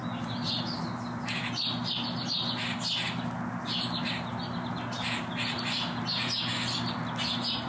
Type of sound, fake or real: real